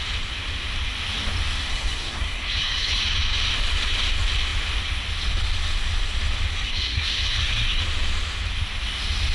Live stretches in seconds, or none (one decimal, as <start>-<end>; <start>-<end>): 0.0-1.7; 3.0-6.5; 7.8-9.3